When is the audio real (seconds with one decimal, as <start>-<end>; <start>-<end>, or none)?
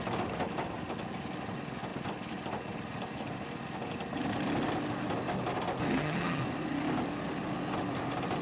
0.0-5.9; 6.4-8.4